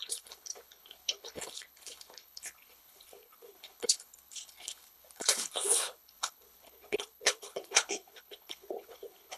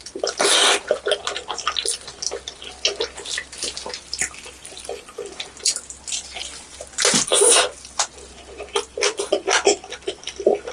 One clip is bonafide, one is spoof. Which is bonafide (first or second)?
second